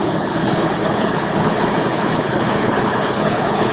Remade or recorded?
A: remade